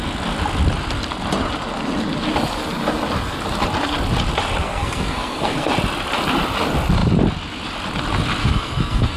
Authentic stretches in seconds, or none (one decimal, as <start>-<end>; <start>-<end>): 0.0-4.6; 5.7-8.4